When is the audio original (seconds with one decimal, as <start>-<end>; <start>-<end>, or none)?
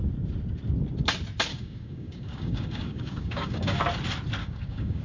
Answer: 0.0-1.5; 3.8-4.4